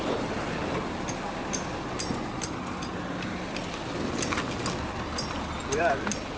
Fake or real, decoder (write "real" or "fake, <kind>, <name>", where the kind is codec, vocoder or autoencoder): real